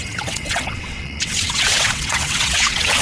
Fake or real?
fake